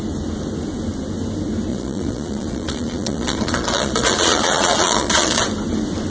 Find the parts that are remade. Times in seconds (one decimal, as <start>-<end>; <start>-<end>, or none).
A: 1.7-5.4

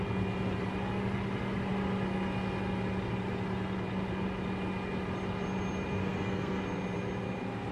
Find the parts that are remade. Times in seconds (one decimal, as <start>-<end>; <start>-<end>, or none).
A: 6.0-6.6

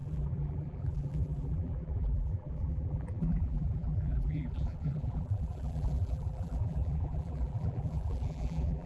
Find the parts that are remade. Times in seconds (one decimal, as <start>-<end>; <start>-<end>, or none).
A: 0.0-8.9

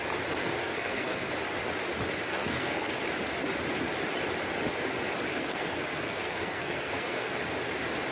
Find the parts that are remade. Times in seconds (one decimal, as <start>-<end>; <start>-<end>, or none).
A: 0.4-1.3; 2.3-2.9; 5.3-7.4

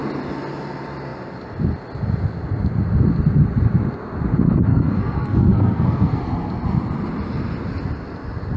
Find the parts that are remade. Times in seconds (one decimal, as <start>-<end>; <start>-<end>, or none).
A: 4.7-6.2